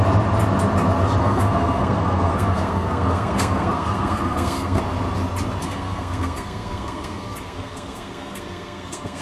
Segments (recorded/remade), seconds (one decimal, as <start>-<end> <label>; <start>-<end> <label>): 0.0-1.2 recorded; 1.2-4.8 remade; 4.8-5.6 recorded; 5.6-9.2 remade